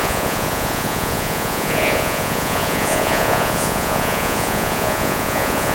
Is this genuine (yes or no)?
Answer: no